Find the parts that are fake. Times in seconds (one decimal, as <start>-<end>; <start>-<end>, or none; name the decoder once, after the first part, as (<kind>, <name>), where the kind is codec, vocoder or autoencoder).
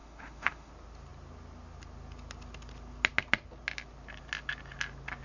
0.0-0.7 (autoencoder, DAC-VAE)